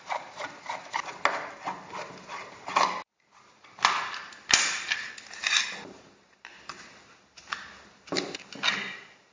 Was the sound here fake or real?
real